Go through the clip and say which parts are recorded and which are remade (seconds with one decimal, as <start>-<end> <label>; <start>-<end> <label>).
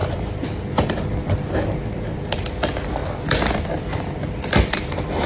0.0-5.3 recorded